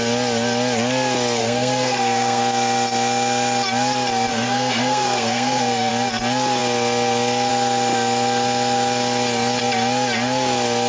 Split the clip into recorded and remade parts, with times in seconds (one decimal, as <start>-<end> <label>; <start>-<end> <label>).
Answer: 0.0-1.4 recorded; 1.4-2.4 remade; 2.4-4.3 recorded; 4.3-5.9 remade; 5.9-10.9 recorded